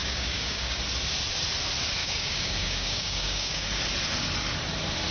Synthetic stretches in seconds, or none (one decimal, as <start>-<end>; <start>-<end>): 0.0-0.8; 2.0-3.8